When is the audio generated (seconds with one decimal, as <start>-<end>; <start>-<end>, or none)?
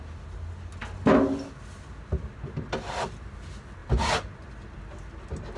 none